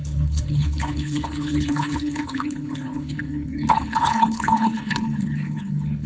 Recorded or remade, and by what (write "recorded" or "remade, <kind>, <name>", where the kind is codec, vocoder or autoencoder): remade, codec, HILCodec